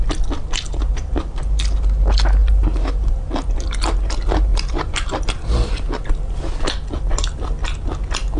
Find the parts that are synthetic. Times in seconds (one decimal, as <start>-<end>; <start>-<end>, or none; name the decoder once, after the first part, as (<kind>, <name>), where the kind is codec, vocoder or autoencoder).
2.4-3.2 (vocoder, BigVGAN v2); 4.5-5.1